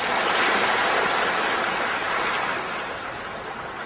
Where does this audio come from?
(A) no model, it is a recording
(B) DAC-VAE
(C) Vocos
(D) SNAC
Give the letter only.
A